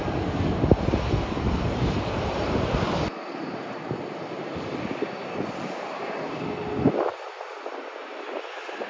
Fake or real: real